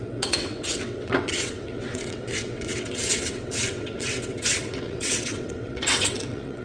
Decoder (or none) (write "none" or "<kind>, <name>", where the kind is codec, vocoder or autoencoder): vocoder, WaveNeXt